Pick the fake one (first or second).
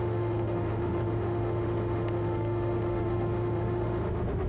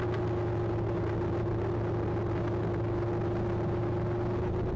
first